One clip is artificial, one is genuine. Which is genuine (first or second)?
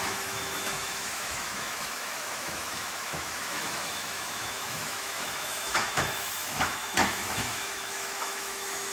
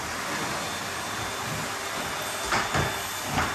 second